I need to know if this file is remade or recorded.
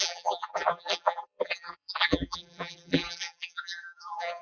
remade